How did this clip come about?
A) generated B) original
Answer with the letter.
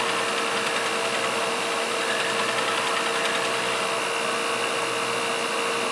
B